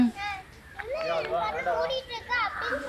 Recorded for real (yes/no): no